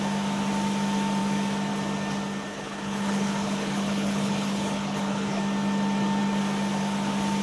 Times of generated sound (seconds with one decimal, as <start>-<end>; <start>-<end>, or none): 2.5-5.4